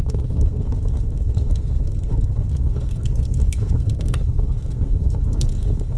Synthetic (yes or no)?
yes